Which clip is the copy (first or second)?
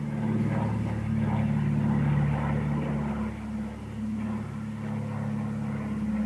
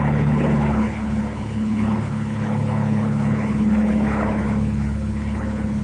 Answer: second